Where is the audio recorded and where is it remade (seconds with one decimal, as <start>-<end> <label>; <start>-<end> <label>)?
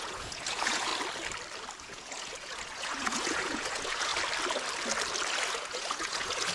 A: 0.0-0.9 remade; 0.9-1.8 recorded; 1.8-4.1 remade; 4.1-5.5 recorded; 5.5-6.5 remade